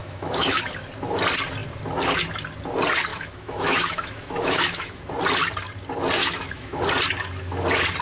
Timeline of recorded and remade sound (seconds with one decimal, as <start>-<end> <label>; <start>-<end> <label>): 0.0-0.7 remade; 0.7-3.1 recorded; 3.1-5.0 remade; 5.0-6.2 recorded; 6.2-6.8 remade; 6.8-8.0 recorded